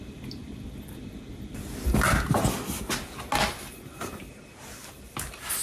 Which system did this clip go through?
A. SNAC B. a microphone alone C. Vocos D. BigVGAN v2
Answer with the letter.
B